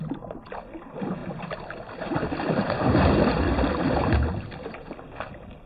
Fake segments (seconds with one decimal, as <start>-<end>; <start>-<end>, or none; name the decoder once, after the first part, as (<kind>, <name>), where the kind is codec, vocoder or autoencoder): none